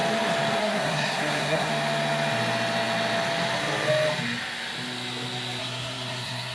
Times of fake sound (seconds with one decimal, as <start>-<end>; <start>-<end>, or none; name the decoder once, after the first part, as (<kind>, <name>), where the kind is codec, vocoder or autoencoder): 0.6-1.7 (codec, SNAC); 5.6-6.5